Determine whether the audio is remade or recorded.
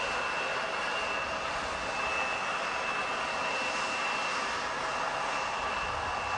recorded